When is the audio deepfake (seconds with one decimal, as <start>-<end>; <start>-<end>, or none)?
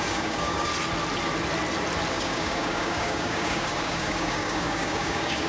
0.0-0.7; 2.1-5.5